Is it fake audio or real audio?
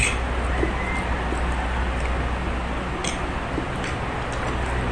real